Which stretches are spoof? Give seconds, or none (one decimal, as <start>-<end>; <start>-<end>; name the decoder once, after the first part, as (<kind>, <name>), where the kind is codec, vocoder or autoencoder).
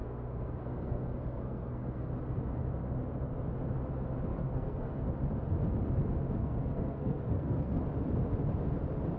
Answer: 0.0-2.1 (codec, SNAC); 4.3-5.1; 6.4-7.8